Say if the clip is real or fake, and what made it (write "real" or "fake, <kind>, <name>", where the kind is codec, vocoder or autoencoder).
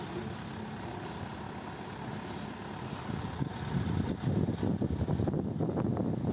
real